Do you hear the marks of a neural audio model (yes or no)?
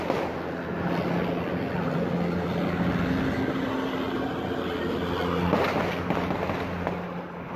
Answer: no